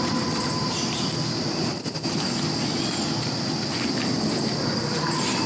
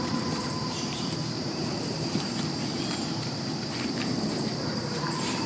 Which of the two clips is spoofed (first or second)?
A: second